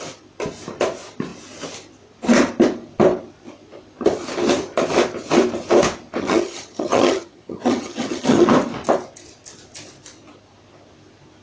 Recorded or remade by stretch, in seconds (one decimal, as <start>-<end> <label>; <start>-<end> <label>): 0.0-6.2 recorded; 6.2-8.5 remade; 8.5-11.4 recorded